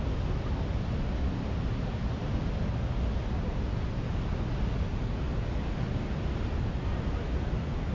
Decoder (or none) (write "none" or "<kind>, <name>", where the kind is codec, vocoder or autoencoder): none